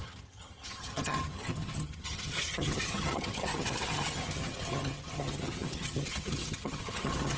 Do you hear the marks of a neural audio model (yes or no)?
yes